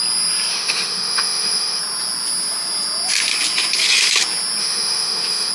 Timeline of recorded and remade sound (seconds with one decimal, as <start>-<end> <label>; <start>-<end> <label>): 0.0-0.5 recorded; 0.5-1.8 remade; 1.8-4.6 recorded; 4.6-5.5 remade